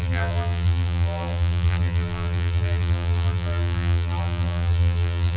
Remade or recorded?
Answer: remade